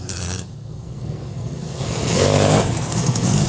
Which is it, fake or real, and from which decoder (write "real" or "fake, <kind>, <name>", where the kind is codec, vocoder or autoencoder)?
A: fake, codec, SNAC